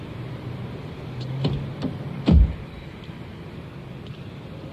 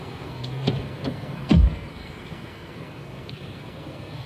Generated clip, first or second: second